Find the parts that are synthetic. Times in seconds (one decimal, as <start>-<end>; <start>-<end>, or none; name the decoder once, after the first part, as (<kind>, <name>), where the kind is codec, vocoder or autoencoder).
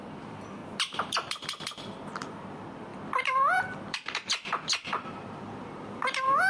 0.0-6.5 (vocoder, BigVGAN v2)